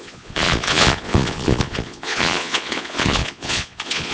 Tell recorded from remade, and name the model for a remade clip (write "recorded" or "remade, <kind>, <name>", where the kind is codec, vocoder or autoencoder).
remade, vocoder, Vocos